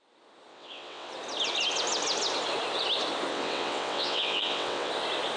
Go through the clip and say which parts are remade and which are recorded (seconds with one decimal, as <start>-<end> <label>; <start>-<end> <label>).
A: 0.0-0.5 recorded; 0.5-1.1 remade; 1.1-3.3 recorded; 3.3-4.9 remade; 4.9-5.4 recorded